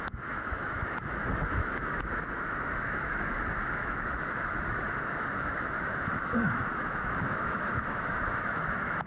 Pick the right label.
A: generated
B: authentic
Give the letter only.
A